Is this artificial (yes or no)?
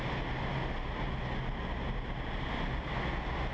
no